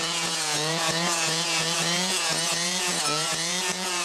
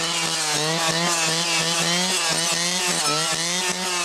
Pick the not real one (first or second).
first